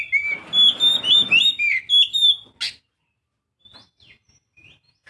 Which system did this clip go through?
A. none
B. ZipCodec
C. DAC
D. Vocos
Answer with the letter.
A